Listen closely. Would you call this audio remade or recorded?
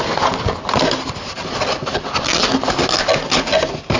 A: recorded